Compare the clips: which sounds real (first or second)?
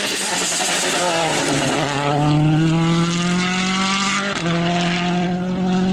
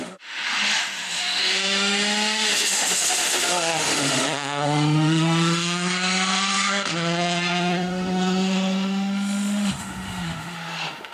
first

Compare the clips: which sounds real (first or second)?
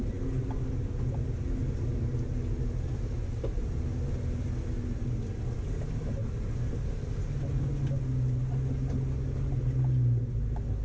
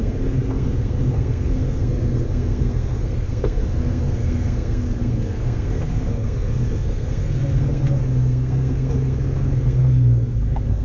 first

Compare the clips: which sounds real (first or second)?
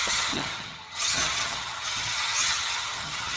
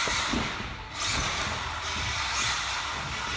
second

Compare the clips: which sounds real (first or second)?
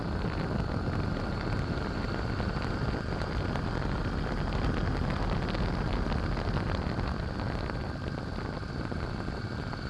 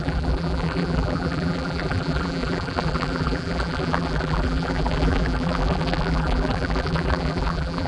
first